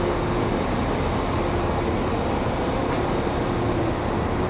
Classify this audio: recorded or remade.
recorded